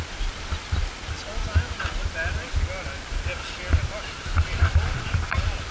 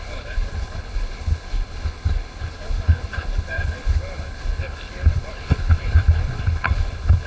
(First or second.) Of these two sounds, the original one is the first